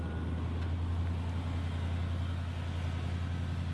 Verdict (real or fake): real